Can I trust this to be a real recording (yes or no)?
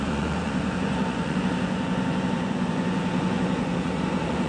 no